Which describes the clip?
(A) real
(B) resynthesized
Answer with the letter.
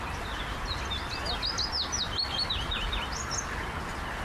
A